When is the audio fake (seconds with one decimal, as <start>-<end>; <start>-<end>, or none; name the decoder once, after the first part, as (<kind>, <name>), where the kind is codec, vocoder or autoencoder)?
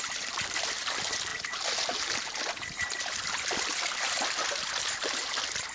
none